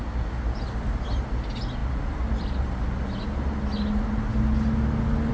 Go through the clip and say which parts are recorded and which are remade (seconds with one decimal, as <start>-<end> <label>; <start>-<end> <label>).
0.0-5.3 recorded